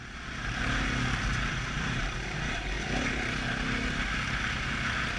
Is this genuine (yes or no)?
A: yes